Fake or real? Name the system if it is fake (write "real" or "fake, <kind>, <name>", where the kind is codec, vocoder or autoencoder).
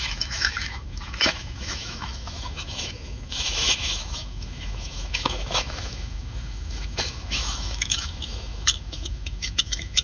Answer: fake, autoencoder, DAC-VAE